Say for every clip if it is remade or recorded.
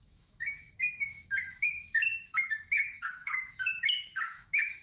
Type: remade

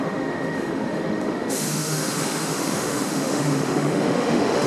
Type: remade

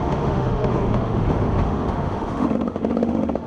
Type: remade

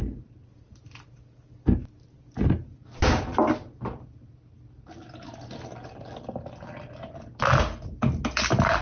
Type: recorded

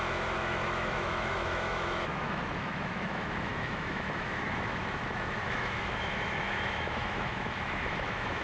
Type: remade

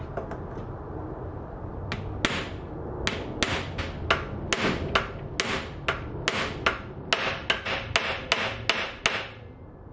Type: recorded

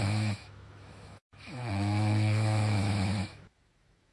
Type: remade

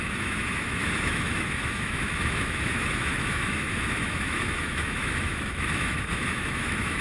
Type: remade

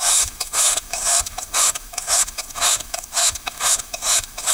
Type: remade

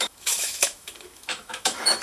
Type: remade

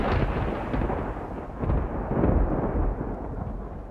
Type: recorded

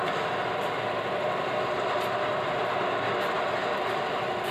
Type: recorded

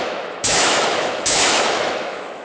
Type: remade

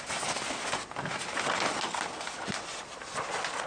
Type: recorded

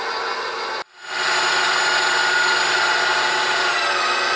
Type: recorded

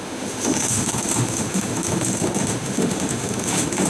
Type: remade